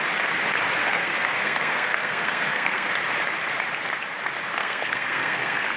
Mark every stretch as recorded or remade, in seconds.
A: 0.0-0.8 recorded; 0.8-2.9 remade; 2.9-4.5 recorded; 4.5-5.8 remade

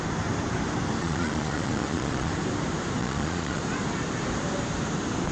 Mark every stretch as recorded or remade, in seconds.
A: 0.0-1.0 recorded; 1.0-2.3 remade; 2.3-3.0 recorded; 3.0-3.6 remade; 3.6-5.3 recorded

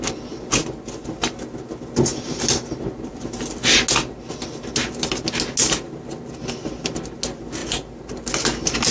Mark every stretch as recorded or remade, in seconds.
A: 0.0-8.9 recorded

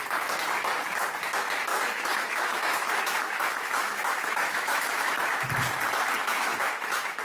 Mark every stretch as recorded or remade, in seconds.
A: 0.0-1.7 recorded; 1.7-5.0 remade; 5.0-6.2 recorded; 6.2-7.2 remade

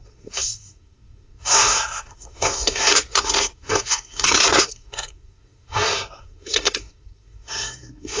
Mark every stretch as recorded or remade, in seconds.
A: 0.0-8.2 remade